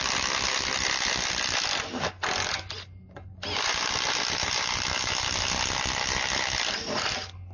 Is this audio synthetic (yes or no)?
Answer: no